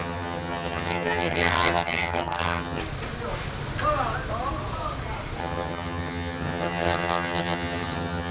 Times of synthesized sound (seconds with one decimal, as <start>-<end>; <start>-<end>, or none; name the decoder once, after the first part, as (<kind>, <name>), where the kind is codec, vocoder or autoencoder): 0.0-2.8 (vocoder, HiFi-GAN); 5.4-8.3